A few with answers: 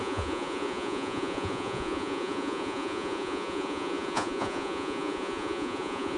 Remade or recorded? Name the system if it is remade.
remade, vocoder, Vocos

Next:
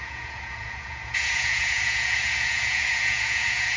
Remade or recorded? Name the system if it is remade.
remade, vocoder, Vocos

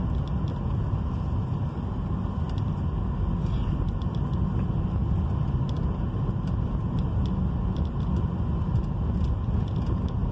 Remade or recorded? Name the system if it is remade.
recorded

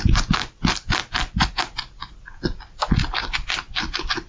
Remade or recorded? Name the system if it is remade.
recorded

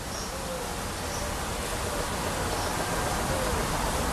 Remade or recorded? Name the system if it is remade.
recorded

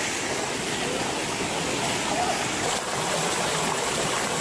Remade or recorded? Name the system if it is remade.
recorded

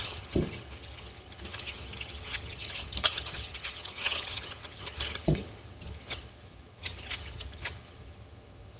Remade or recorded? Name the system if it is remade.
remade, vocoder, HiFi-GAN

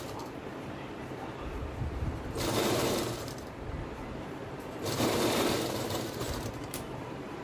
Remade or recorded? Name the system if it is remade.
remade, vocoder, BigVGAN v2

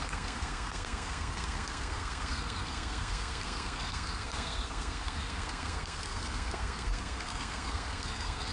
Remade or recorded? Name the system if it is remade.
remade, codec, SNAC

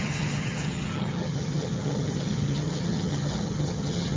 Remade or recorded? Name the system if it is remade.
remade, vocoder, HiFi-GAN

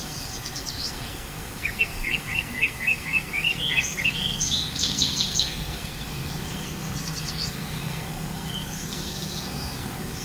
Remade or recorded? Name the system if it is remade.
remade, codec, SNAC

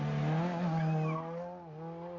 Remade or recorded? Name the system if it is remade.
recorded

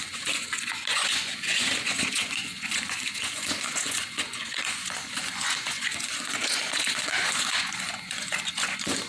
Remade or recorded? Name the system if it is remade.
remade, vocoder, Vocos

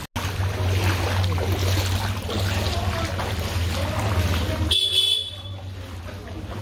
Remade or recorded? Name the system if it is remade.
recorded